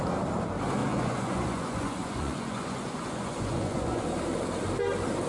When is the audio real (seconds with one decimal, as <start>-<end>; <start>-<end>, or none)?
0.0-0.8; 4.0-5.3